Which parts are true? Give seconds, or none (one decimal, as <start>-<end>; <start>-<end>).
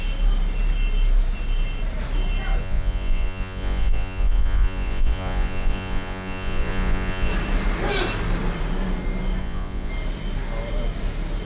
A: 0.0-2.6; 7.3-9.4; 9.9-11.4